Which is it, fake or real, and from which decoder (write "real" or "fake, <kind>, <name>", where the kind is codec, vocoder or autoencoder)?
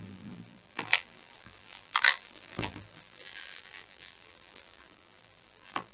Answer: fake, vocoder, BigVGAN v2